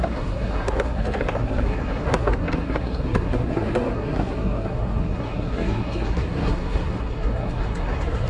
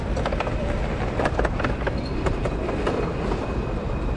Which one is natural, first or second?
second